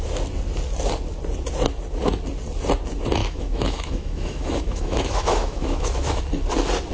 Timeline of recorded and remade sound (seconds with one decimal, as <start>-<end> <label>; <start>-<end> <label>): 0.0-3.2 recorded; 3.2-6.2 remade; 6.2-6.9 recorded